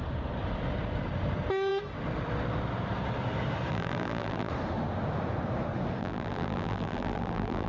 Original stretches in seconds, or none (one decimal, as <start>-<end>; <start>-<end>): 0.0-3.7; 4.5-6.0